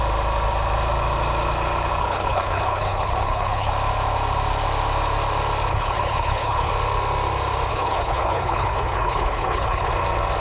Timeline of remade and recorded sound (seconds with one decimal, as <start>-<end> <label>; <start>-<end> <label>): 0.0-2.0 recorded; 2.0-3.7 remade; 3.7-5.7 recorded; 5.7-6.7 remade; 6.7-7.7 recorded; 7.7-9.9 remade; 9.9-10.4 recorded